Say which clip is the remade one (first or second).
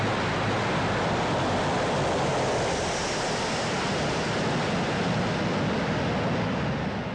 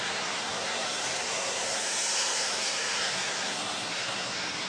second